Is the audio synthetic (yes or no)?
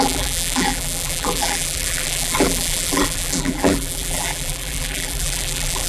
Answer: yes